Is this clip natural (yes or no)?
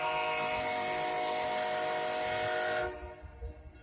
yes